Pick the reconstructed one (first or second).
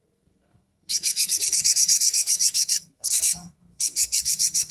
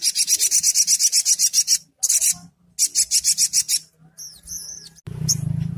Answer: first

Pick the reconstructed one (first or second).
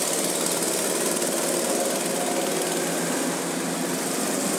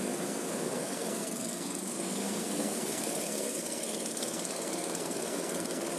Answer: second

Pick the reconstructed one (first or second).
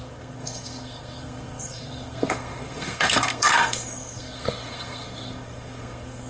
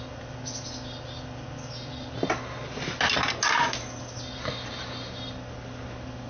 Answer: first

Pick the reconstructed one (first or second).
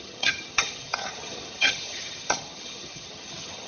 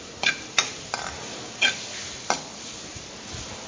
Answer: first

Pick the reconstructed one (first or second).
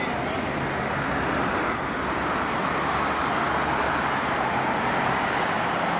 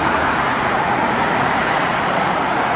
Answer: second